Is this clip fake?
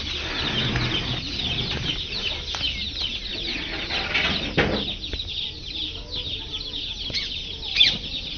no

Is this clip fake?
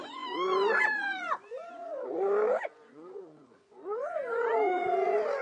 yes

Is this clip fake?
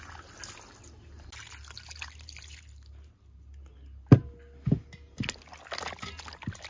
no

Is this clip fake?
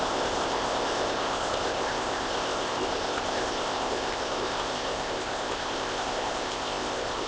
yes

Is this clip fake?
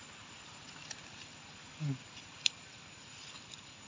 no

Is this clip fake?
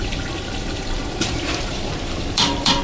yes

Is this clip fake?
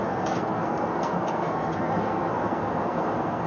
yes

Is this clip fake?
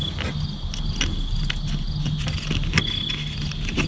no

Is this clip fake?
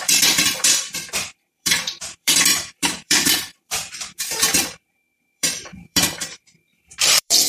yes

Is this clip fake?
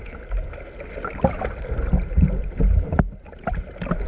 no